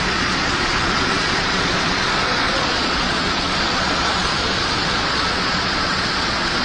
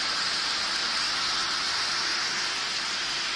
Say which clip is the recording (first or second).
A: second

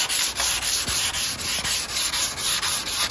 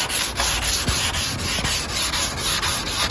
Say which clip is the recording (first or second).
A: second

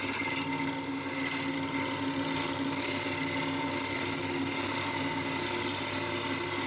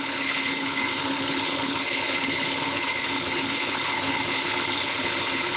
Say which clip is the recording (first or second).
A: first